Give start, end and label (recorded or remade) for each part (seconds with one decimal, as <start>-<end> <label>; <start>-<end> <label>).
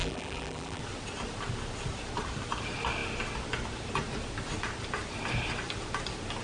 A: 0.0-0.8 remade; 0.8-6.4 recorded